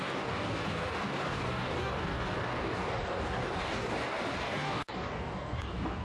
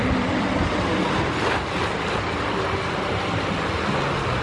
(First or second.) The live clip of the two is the second